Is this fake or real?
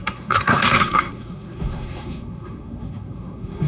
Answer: fake